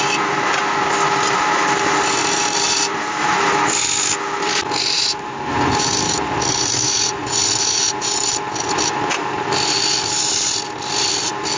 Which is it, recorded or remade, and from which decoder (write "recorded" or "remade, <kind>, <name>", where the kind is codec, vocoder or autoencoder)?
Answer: recorded